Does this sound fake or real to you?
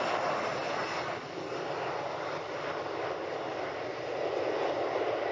real